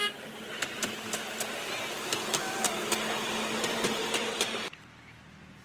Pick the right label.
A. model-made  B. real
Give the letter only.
B